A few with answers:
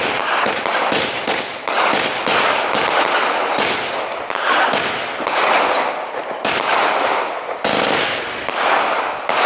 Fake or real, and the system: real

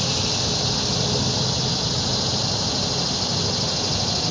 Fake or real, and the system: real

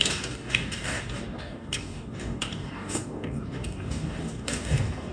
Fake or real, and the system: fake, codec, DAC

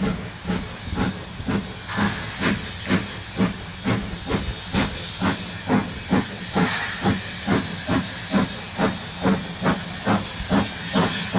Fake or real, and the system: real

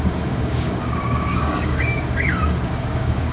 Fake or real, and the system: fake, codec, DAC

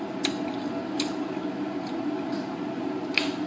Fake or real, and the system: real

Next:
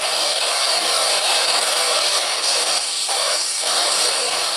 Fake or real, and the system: fake, codec, DAC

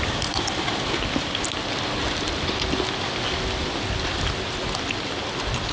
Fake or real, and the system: real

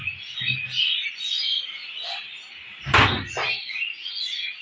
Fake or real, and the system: real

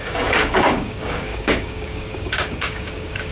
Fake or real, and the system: fake, codec, DAC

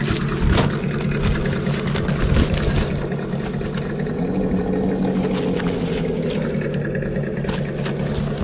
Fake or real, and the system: real